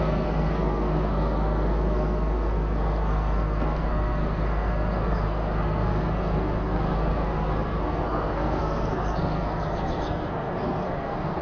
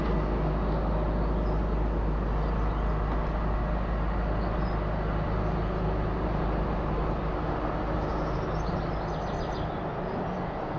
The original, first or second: second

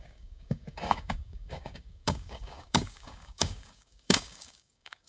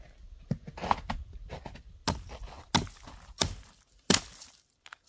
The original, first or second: second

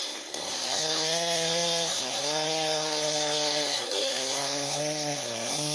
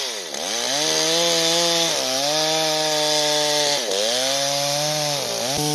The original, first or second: second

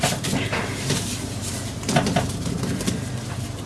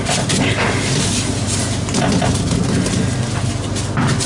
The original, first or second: second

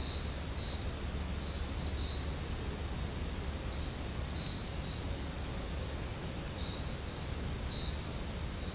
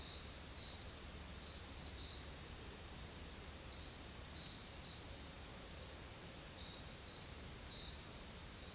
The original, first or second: first